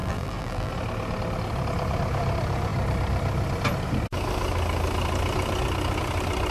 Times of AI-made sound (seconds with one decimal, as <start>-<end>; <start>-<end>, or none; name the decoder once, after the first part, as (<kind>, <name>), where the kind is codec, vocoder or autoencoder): 0.0-0.7 (vocoder, BigVGAN v2)